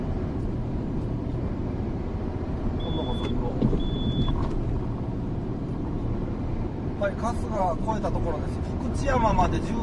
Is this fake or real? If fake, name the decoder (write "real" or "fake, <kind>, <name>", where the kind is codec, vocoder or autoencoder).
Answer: fake, vocoder, BigVGAN v2